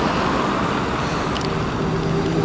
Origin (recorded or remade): recorded